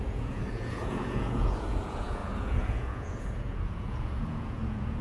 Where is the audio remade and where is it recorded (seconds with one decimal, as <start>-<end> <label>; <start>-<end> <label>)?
0.0-5.0 remade

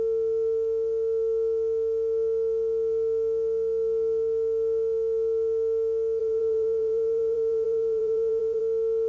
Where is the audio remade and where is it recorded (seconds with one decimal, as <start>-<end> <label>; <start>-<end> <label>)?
0.0-6.2 recorded; 6.2-8.6 remade; 8.6-9.1 recorded